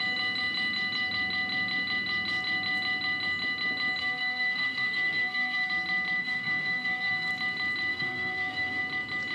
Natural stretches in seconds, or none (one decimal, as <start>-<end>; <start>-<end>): 0.0-4.0; 5.7-6.2; 7.3-7.9; 8.8-9.3